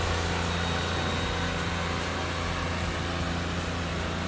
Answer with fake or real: real